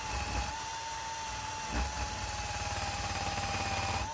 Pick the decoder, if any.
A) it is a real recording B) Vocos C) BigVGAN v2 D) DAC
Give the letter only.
A